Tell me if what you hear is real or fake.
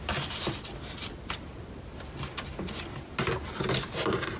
real